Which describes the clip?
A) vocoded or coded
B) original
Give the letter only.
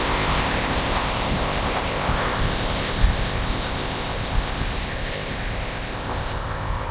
A